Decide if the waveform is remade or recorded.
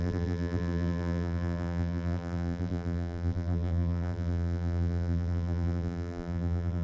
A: remade